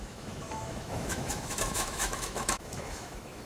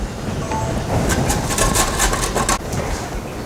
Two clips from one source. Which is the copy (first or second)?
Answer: first